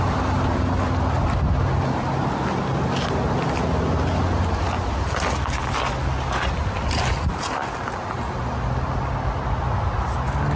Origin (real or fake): real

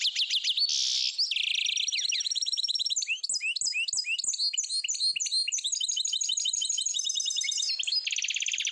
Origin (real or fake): real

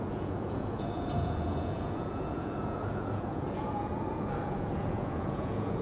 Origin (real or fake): fake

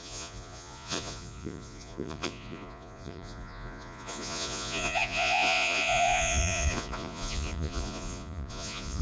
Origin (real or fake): fake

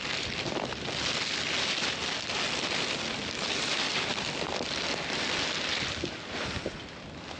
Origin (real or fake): real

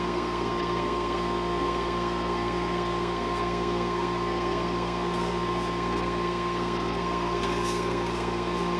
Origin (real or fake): fake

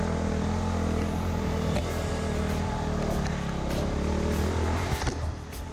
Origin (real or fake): real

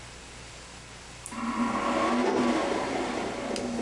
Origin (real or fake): real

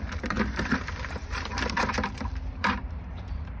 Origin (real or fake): fake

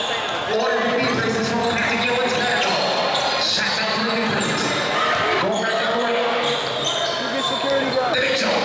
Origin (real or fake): real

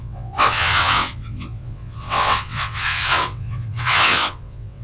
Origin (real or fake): fake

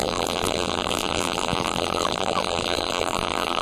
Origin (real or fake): fake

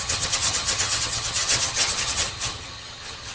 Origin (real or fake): fake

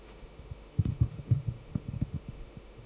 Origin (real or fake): fake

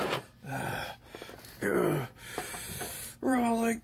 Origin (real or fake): fake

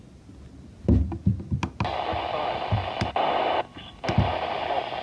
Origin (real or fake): real